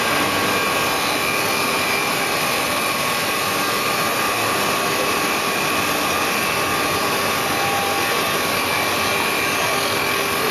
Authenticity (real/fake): real